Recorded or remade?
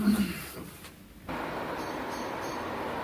recorded